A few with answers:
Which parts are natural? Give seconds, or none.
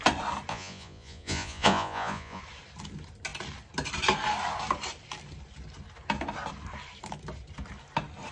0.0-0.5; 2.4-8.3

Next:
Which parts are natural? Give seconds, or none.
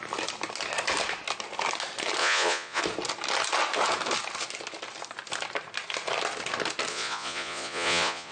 0.0-2.2; 2.8-6.9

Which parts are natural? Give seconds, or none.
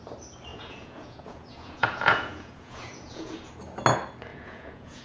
0.0-0.5; 3.5-4.3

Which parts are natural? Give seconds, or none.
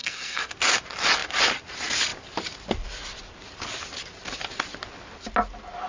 0.5-5.9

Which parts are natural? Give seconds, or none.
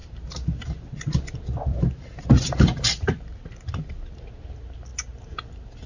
0.0-1.7; 3.9-5.9